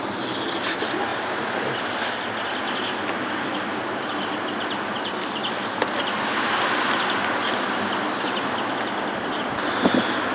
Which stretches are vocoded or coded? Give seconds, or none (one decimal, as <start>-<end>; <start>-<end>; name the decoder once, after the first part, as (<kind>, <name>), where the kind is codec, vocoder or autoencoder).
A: none